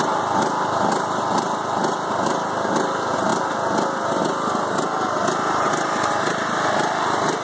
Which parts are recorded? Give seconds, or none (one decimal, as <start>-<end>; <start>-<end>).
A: 0.0-7.4